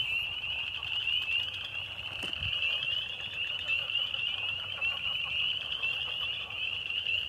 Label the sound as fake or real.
real